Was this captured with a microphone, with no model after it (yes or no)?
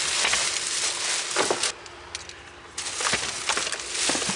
yes